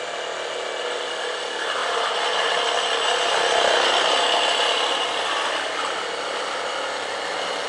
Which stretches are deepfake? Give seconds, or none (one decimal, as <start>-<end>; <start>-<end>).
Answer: none